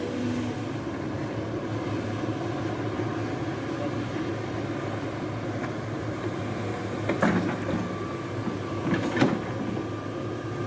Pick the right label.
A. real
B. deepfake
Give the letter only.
A